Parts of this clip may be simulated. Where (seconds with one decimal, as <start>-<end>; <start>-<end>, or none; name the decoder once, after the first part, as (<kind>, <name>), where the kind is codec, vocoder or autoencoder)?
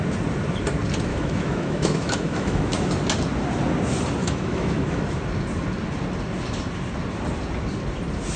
1.1-2.9 (autoencoder, DAC-VAE); 4.2-5.0